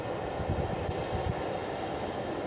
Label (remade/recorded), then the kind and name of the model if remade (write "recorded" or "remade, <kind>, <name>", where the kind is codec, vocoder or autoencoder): recorded